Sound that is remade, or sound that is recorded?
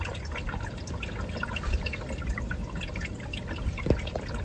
recorded